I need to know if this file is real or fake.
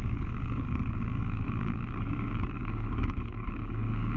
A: fake